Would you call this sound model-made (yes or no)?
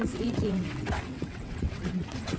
yes